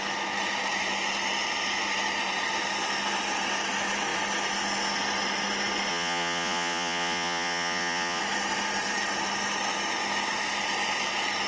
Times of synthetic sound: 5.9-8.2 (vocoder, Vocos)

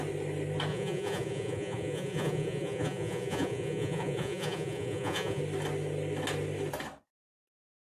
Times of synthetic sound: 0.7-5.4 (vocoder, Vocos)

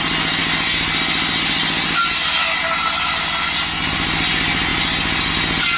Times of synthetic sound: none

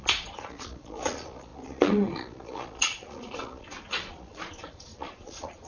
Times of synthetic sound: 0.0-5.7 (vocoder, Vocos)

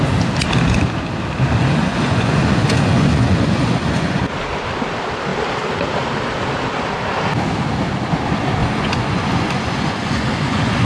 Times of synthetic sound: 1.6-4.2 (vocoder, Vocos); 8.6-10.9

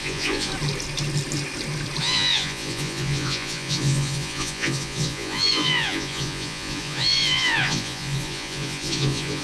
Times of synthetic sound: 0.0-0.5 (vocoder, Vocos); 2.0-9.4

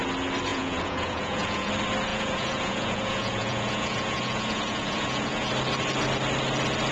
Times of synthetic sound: 0.5-1.7 (vocoder, Vocos); 2.1-5.5

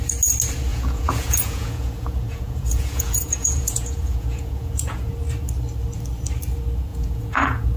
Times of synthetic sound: 0.7-5.1 (vocoder, Vocos); 6.9-7.8